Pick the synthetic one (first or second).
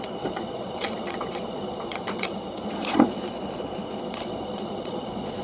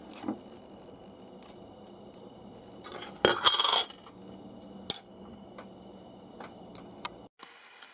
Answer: first